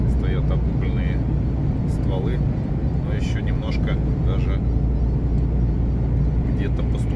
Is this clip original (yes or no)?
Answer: yes